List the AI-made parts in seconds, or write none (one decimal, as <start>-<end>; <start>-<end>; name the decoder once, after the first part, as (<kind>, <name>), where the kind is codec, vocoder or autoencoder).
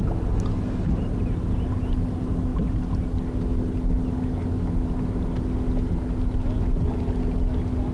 none